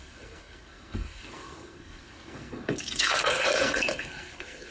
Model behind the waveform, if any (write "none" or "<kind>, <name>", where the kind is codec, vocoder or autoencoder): codec, SNAC